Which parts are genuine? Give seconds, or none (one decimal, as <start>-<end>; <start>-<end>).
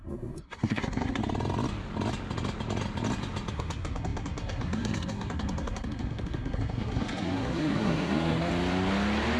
1.2-3.5; 8.5-9.4